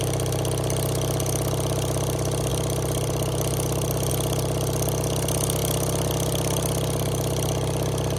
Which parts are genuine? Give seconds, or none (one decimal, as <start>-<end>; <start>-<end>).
0.0-2.5; 4.1-8.2